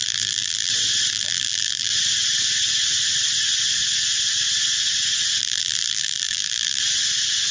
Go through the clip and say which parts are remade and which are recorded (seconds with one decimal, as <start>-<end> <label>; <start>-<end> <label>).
0.0-0.7 remade; 0.7-1.1 recorded; 1.1-1.9 remade; 1.9-5.4 recorded; 5.4-6.8 remade; 6.8-7.5 recorded